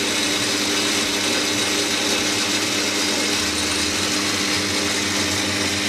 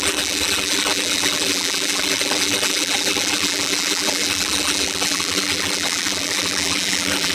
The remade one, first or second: second